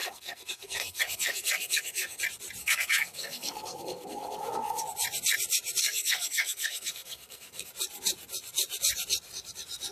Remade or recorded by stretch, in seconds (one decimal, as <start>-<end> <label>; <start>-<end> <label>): 0.0-2.2 remade; 2.2-2.6 recorded; 2.6-4.8 remade; 4.8-5.8 recorded; 5.8-7.7 remade; 7.7-9.9 recorded

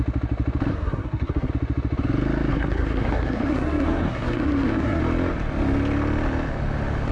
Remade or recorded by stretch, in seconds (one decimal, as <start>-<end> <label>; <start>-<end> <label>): 0.0-0.7 recorded; 0.7-1.5 remade; 1.5-2.5 recorded; 2.5-5.0 remade; 5.0-7.1 recorded

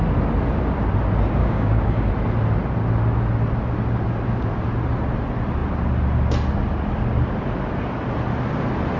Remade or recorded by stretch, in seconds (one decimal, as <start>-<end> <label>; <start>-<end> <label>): 0.0-1.4 recorded; 1.4-2.1 remade; 2.1-9.0 recorded

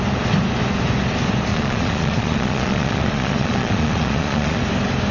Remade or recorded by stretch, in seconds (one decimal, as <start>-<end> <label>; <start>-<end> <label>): 0.0-1.5 recorded; 1.5-4.6 remade; 4.6-5.1 recorded